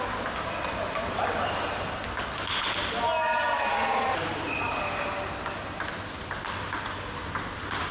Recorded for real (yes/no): yes